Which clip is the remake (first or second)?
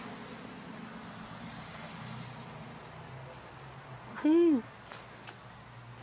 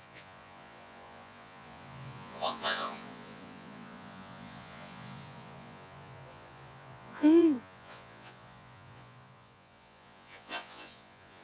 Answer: second